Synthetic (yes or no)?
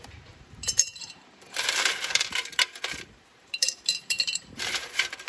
yes